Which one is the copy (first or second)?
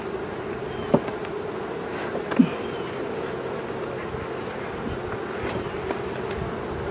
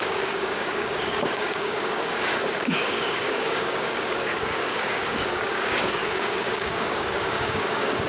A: second